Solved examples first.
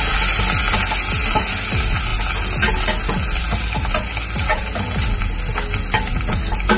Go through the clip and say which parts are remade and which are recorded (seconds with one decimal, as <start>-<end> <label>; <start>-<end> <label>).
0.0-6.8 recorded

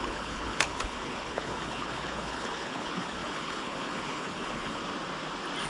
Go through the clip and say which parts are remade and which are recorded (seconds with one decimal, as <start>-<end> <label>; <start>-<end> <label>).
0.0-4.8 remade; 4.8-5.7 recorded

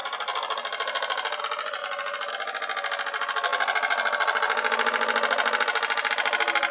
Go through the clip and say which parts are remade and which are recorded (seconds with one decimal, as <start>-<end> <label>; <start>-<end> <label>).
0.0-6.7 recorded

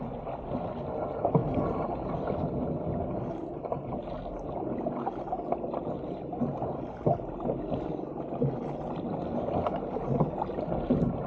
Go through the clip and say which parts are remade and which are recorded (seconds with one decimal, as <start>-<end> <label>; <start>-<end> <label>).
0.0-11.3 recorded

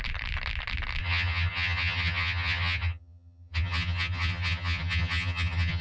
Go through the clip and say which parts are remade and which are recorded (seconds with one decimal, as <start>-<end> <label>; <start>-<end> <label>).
0.0-1.0 recorded; 1.0-5.8 remade